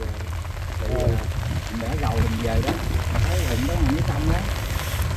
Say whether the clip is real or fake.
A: real